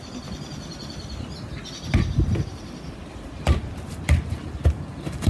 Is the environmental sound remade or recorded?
recorded